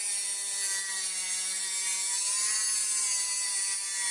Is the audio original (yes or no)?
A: yes